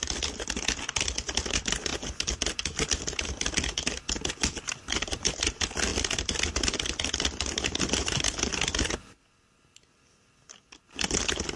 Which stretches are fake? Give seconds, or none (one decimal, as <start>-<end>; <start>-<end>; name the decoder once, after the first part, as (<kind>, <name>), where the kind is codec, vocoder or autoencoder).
5.9-8.7 (vocoder, BigVGAN v2)